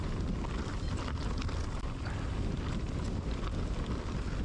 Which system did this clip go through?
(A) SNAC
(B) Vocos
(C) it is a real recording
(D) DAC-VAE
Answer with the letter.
C